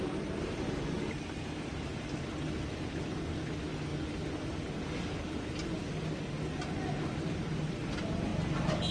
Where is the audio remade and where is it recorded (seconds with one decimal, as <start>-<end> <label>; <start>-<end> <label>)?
0.0-8.9 recorded